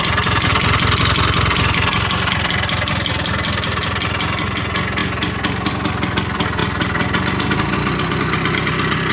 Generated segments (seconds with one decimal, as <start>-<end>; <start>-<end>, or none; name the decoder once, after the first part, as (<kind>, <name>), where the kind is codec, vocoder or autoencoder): none